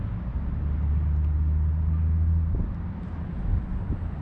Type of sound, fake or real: real